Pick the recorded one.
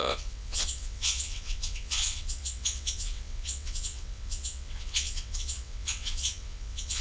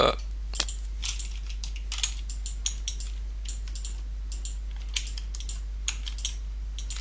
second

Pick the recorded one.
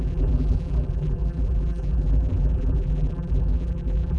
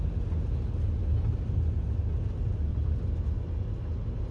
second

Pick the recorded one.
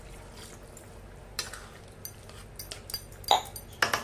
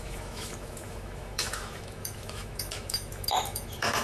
first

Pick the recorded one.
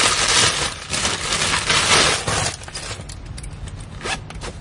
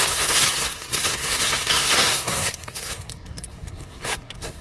first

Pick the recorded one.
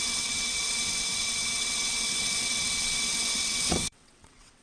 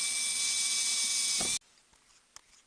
second